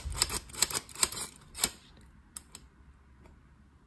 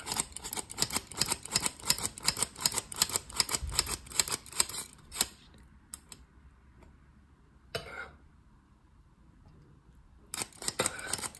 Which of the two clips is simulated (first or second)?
second